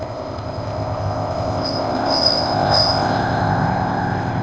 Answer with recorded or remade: remade